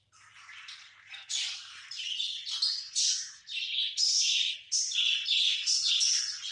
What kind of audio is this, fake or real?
real